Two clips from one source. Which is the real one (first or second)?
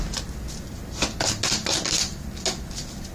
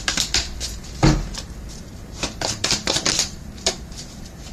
first